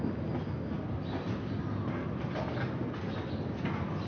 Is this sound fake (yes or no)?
no